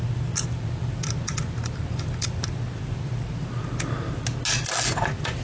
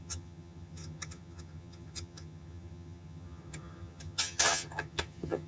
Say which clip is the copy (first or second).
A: second